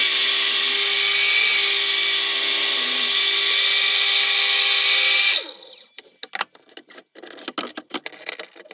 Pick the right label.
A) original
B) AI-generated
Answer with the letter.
A